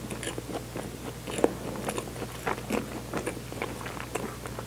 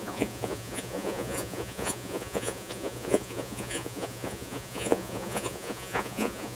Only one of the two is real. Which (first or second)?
first